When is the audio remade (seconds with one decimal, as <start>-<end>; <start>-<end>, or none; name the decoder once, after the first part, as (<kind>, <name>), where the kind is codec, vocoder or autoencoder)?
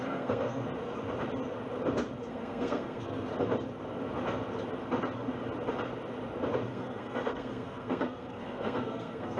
0.0-0.6 (codec, SNAC); 2.3-3.3; 6.7-9.4